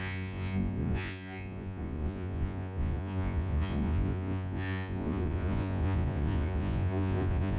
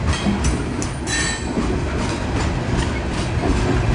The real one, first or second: second